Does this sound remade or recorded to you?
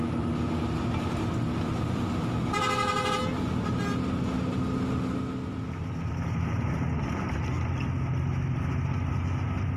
recorded